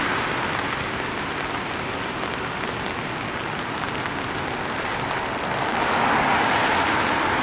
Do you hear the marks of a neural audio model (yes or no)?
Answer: no